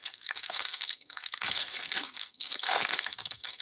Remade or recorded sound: remade